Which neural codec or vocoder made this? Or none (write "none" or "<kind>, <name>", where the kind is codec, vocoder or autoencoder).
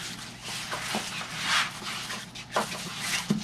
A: none